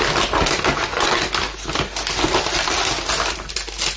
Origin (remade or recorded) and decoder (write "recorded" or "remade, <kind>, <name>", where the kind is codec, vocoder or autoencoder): recorded